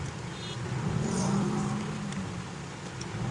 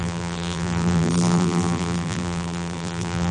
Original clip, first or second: first